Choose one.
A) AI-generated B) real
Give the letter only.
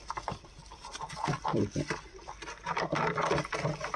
A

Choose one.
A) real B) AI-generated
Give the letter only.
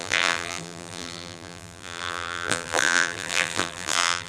B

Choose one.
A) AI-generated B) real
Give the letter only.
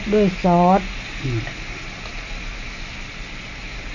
B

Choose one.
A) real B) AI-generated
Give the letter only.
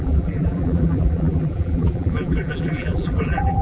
B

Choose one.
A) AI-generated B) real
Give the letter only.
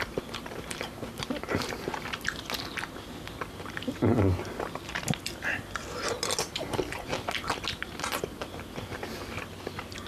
B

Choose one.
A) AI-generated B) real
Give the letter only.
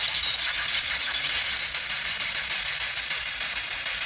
A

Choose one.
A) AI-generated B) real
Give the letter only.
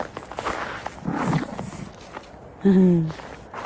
B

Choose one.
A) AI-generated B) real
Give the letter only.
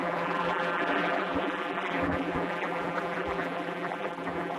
A